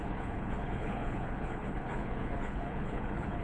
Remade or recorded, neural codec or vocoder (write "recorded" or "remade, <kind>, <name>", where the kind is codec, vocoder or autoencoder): remade, codec, HILCodec